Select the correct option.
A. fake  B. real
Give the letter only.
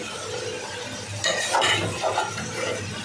B